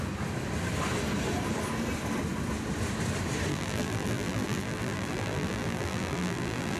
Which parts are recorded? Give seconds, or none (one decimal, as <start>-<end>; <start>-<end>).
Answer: 0.0-3.5